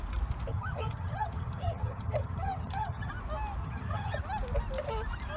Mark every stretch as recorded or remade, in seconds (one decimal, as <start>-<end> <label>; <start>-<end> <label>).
0.0-0.5 recorded; 0.5-3.1 remade; 3.1-3.6 recorded; 3.6-4.2 remade; 4.2-5.4 recorded